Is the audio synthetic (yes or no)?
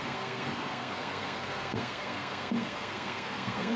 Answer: yes